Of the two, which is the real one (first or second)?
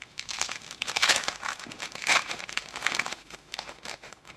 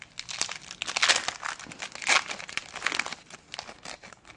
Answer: second